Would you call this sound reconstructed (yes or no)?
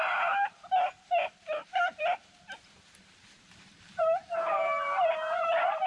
yes